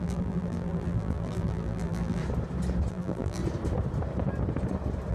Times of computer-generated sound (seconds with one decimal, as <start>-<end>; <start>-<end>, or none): 0.0-2.2; 2.9-3.4

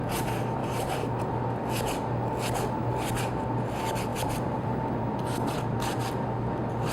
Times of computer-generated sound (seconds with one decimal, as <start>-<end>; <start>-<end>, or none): 0.6-1.2; 4.1-5.0